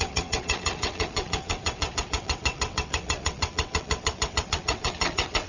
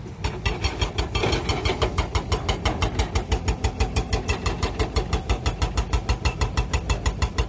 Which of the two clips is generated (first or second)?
first